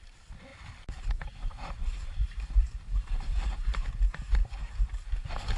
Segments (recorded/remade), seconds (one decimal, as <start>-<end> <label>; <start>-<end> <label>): 0.0-0.5 recorded; 0.5-3.9 remade; 3.9-4.4 recorded; 4.4-4.9 remade; 4.9-5.6 recorded